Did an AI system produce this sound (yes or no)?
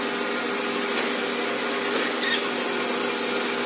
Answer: no